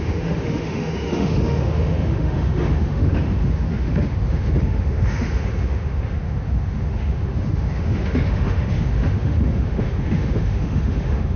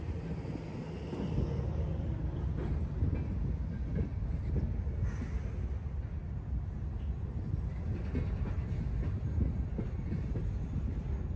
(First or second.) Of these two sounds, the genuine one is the second